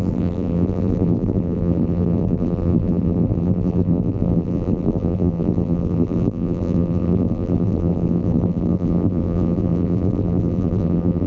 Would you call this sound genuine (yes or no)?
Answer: no